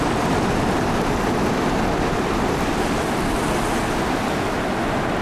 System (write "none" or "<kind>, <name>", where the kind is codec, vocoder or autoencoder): none